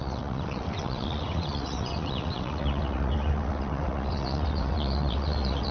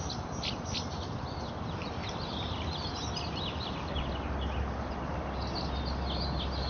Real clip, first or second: second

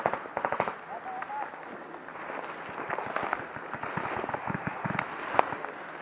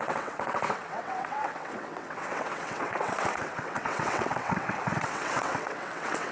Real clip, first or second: first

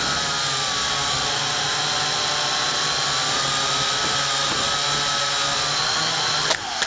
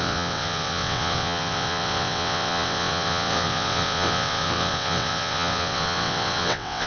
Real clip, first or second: first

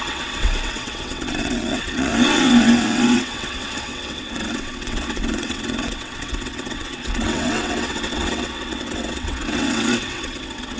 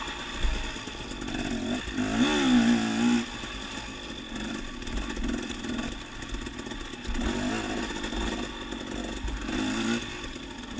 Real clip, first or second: second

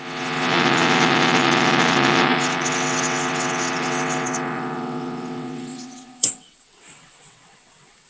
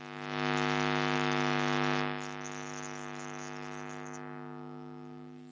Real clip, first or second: second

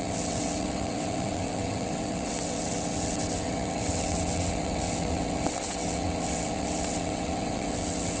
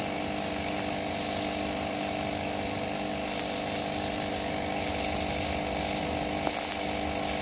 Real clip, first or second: second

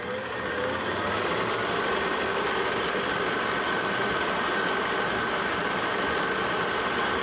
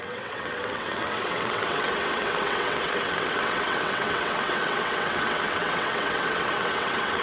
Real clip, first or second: first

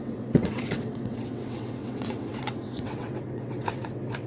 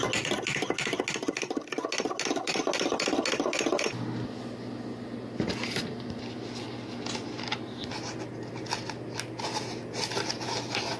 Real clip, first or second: second